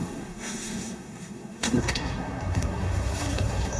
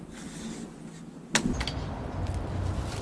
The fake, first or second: first